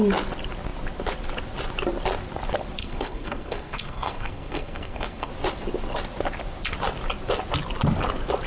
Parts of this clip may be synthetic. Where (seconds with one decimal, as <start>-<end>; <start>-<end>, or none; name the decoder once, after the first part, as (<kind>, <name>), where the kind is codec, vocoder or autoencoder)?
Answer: 2.8-5.3 (codec, SNAC)

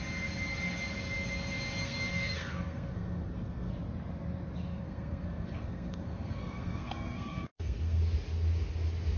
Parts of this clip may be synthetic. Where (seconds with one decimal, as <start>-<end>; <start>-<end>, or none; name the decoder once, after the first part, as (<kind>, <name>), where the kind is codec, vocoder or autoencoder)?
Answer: 1.8-3.7 (codec, SNAC); 4.7-8.0

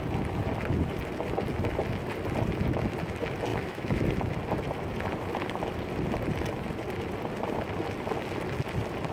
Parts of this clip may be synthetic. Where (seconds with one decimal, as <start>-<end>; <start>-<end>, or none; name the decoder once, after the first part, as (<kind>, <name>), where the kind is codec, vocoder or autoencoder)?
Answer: 3.5-4.1 (autoencoder, DAC-VAE)

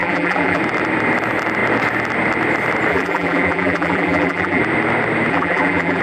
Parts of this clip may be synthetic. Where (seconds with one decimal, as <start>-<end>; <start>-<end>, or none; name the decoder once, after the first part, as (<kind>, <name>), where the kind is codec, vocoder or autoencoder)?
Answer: 0.0-0.6 (vocoder, BigVGAN v2); 2.9-4.6; 5.3-6.0

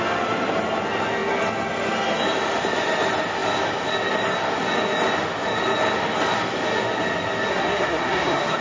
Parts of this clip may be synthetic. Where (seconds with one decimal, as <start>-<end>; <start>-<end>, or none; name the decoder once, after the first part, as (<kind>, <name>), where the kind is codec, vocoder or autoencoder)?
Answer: 7.5-8.6 (codec, SNAC)

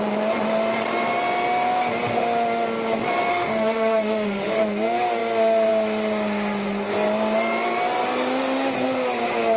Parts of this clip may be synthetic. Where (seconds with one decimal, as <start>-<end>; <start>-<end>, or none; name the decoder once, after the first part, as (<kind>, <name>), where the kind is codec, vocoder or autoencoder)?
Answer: 3.3-4.6 (autoencoder, DAC-VAE)

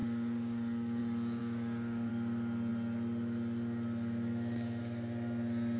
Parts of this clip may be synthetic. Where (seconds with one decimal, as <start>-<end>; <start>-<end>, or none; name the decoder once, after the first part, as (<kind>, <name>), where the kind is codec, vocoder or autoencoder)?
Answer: 0.0-1.0 (codec, DAC); 1.4-2.1

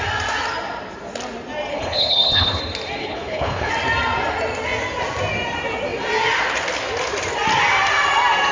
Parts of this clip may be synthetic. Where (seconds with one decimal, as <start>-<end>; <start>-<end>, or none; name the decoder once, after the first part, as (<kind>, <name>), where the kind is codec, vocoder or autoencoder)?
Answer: 1.7-2.6 (codec, HILCodec); 3.0-3.7